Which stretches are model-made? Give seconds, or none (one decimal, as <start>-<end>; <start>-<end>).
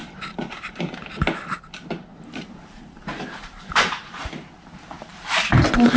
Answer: 0.0-0.8; 2.1-4.3; 5.1-5.6